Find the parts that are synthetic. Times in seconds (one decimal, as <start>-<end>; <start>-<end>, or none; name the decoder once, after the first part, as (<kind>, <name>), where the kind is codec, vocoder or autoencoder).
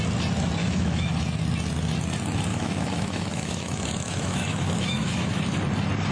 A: 0.6-1.1 (autoencoder, DAC-VAE); 2.5-5.4